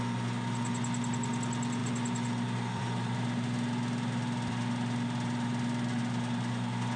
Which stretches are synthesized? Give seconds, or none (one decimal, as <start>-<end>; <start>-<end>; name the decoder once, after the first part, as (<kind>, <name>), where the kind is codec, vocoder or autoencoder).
1.8-6.0 (vocoder, BigVGAN v2)